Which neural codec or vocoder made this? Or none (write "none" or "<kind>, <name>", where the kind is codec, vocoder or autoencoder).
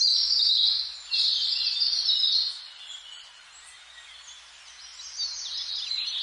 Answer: none